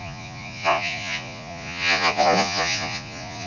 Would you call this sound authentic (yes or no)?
no